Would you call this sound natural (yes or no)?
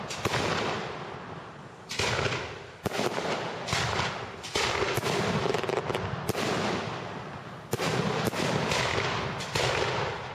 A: yes